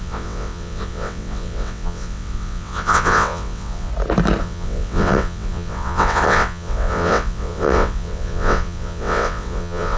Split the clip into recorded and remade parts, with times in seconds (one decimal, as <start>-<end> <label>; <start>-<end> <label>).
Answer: 0.0-3.9 remade; 3.9-4.4 recorded; 4.4-10.0 remade